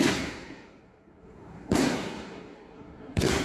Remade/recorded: remade